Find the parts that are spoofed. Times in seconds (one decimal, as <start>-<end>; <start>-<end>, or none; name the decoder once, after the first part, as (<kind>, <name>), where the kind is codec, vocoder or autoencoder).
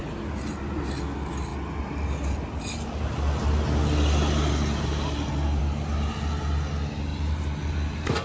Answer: none